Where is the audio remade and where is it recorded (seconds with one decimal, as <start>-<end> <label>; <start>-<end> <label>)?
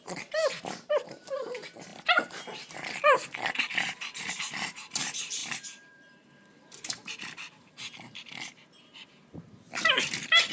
0.0-9.2 remade; 9.2-10.5 recorded